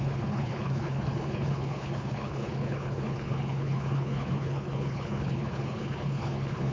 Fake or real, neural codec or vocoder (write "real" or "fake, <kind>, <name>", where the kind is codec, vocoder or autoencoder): fake, codec, HILCodec